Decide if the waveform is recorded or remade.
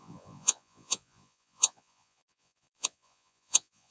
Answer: remade